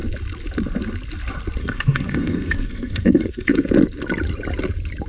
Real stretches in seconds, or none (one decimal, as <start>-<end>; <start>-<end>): 0.0-1.6; 3.7-5.1